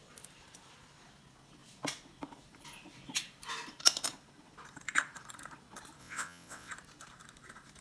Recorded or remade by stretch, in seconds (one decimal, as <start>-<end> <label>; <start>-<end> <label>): 0.0-6.0 recorded; 6.0-6.7 remade; 6.7-7.8 recorded